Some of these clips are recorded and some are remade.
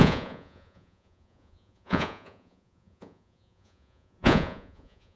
remade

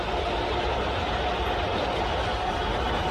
recorded